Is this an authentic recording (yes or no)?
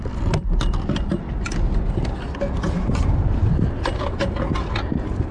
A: yes